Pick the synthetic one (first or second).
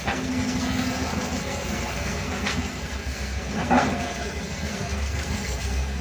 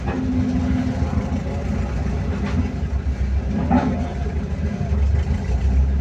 first